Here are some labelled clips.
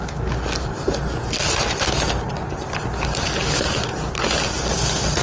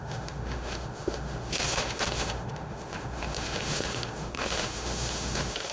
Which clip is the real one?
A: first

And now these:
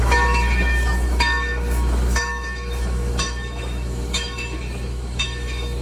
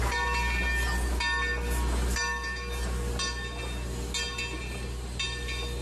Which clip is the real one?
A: second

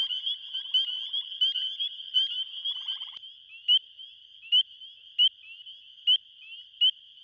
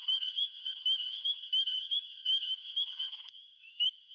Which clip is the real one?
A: first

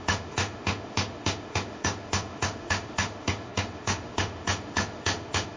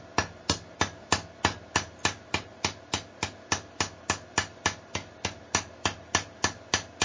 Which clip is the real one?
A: second